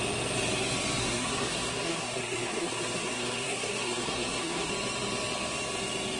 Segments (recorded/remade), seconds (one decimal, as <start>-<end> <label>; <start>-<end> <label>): 0.0-1.0 recorded; 1.0-4.7 remade; 4.7-6.2 recorded